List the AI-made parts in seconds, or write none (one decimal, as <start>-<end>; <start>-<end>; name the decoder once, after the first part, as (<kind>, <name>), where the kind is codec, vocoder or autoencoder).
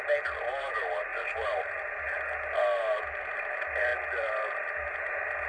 none